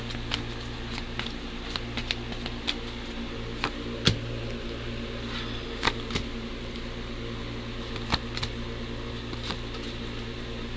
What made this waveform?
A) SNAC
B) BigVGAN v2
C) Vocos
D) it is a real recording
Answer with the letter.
D